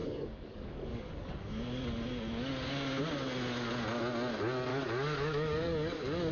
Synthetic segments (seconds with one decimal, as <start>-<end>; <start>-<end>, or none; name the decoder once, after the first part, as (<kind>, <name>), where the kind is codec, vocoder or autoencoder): 0.0-1.8 (codec, DAC); 4.7-6.3